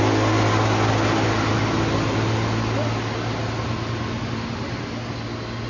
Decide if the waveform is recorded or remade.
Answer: recorded